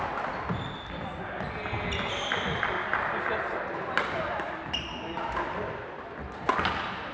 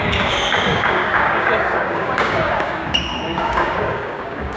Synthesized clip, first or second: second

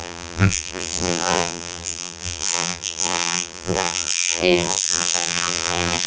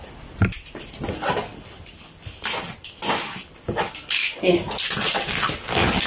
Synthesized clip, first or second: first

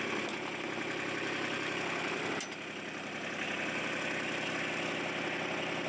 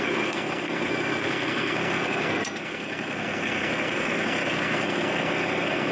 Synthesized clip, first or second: second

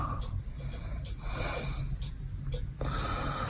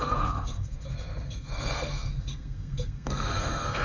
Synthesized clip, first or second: second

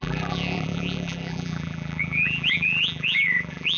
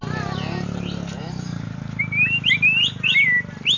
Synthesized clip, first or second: first